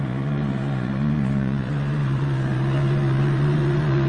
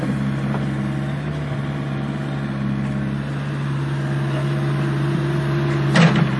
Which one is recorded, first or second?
second